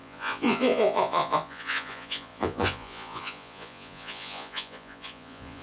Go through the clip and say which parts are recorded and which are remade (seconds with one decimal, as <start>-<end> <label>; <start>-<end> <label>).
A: 0.0-5.6 remade

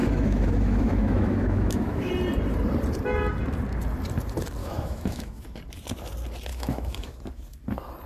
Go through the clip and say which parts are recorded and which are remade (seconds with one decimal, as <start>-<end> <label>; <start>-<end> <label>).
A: 0.0-2.1 remade; 2.1-4.6 recorded; 4.6-5.4 remade; 5.4-6.5 recorded; 6.5-7.2 remade; 7.2-8.1 recorded

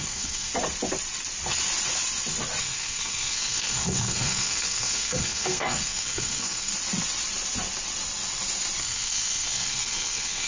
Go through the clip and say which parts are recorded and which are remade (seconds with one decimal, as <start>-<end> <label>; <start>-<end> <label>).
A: 0.0-0.5 remade; 0.5-2.6 recorded; 2.6-6.7 remade; 6.7-8.8 recorded; 8.8-10.5 remade

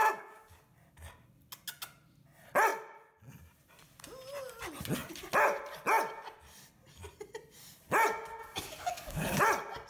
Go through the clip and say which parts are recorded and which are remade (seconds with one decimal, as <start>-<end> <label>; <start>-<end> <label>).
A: 0.0-0.6 remade; 0.6-8.4 recorded; 8.4-9.4 remade; 9.4-9.9 recorded

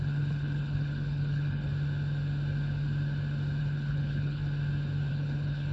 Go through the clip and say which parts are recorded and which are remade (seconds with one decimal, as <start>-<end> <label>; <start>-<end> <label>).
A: 0.0-1.7 remade; 1.7-3.6 recorded; 3.6-4.4 remade; 4.4-5.1 recorded; 5.1-5.7 remade

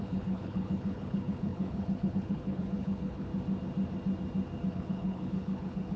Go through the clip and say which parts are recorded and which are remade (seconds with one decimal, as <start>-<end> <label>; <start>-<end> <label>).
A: 0.0-3.3 remade; 3.3-4.7 recorded; 4.7-6.0 remade